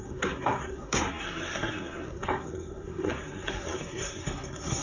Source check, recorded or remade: remade